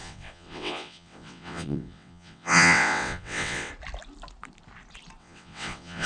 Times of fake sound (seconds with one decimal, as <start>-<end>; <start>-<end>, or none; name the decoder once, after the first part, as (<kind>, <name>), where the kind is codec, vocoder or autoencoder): 0.0-3.7 (vocoder, WaveNeXt); 5.2-6.1